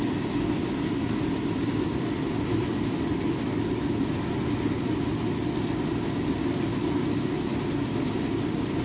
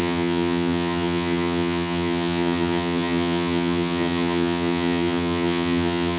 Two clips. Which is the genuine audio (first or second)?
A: first